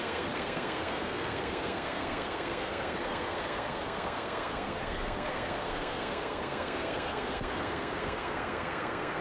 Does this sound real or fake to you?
fake